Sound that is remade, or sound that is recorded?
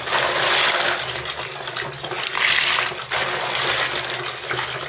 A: recorded